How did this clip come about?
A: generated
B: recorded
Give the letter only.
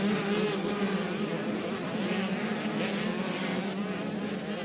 B